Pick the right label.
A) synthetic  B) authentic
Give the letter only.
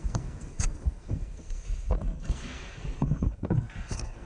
A